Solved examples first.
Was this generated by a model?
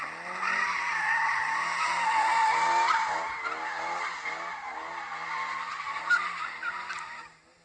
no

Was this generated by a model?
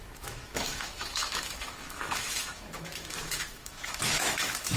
yes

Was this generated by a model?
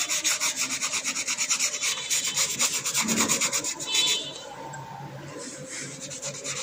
yes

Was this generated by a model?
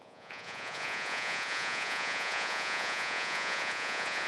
yes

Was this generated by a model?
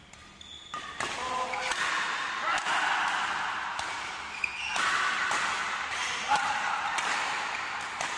no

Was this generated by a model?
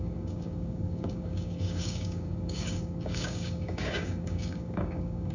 yes